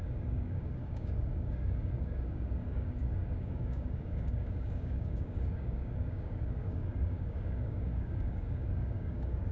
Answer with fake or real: fake